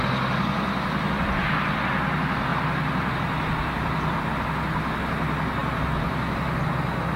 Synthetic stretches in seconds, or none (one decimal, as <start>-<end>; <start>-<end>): none